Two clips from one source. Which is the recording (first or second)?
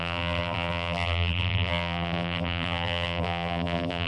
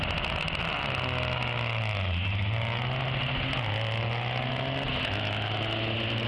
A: second